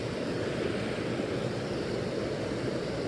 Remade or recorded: recorded